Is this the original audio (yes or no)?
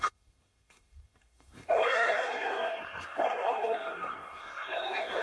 no